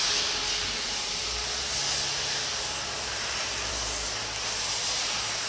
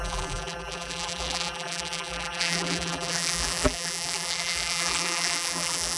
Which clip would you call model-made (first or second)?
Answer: second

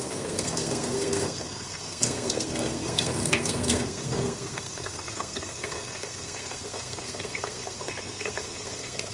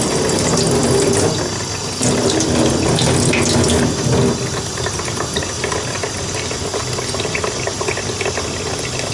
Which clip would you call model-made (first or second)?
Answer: first